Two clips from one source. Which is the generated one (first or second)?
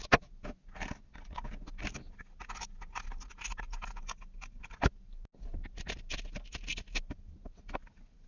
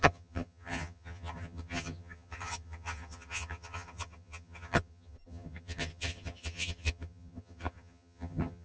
second